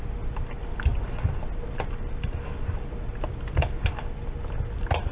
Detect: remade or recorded recorded